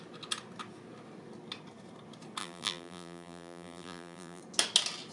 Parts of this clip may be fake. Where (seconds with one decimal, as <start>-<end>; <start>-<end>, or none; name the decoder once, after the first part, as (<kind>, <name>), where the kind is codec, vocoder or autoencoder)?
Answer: 2.4-4.4 (vocoder, BigVGAN v2)

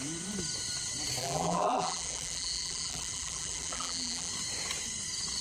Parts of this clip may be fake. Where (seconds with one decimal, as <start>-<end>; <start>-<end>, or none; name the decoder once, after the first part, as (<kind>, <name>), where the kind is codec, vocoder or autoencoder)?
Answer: 1.2-4.3 (vocoder, BigVGAN v2)